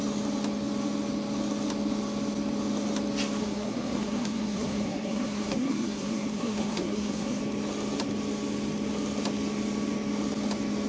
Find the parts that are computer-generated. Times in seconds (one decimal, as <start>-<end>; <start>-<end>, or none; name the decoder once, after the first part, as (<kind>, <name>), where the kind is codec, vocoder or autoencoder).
3.4-7.4 (codec, SNAC)

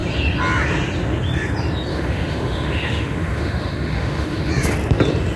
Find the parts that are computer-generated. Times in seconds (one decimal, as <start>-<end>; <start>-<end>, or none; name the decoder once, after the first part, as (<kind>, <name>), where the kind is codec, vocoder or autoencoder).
1.9-4.5 (autoencoder, DAC-VAE)

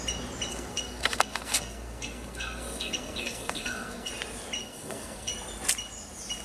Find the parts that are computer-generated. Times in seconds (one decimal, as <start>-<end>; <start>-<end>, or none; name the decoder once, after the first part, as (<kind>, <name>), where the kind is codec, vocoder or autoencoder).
0.5-4.1 (codec, SNAC); 4.6-5.3

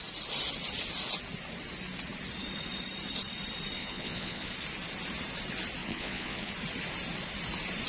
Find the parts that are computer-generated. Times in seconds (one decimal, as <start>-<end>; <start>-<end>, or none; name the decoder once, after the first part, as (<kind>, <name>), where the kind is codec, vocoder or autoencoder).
3.8-4.5 (vocoder, Vocos); 5.8-6.5

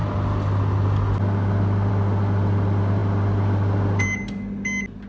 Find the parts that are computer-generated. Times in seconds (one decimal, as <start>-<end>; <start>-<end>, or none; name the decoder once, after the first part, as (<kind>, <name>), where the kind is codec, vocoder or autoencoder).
none

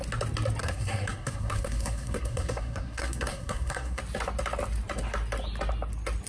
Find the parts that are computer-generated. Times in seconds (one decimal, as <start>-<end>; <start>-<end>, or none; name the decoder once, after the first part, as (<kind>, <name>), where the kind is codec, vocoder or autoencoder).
0.6-4.0 (codec, SNAC)

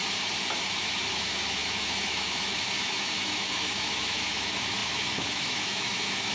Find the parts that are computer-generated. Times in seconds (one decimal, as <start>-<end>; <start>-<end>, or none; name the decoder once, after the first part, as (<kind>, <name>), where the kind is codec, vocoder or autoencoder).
0.7-6.3 (autoencoder, DAC-VAE)

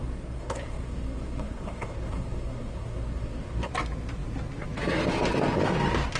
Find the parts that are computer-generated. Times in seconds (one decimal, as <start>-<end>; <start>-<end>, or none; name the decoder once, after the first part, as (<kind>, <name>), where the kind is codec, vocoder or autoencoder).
0.0-3.7 (codec, SNAC)